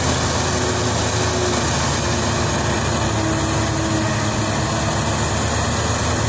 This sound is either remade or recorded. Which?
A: recorded